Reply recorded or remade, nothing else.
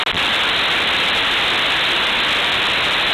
recorded